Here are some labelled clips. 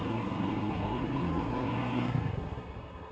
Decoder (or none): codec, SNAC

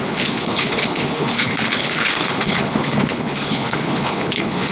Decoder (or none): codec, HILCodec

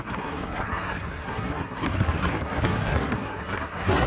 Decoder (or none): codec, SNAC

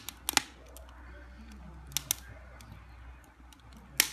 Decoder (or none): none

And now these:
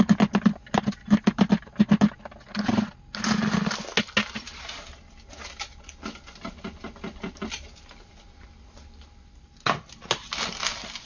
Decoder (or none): none